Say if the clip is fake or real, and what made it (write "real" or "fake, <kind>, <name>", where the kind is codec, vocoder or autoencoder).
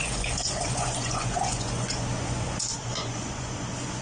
fake, vocoder, Vocos